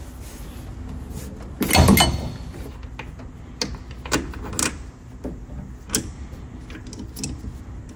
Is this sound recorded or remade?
recorded